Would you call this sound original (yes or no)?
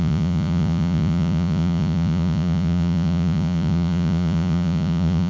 no